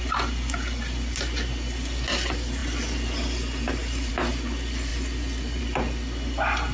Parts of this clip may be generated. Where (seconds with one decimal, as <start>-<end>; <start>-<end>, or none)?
none